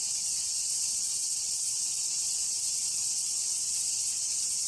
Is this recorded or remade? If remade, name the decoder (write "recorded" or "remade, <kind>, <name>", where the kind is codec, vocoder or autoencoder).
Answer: remade, vocoder, WaveNeXt